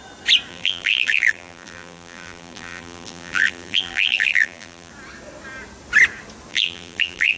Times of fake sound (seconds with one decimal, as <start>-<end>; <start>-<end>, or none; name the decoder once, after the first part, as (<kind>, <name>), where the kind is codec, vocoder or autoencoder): 0.5-4.9 (vocoder, BigVGAN v2); 6.5-7.4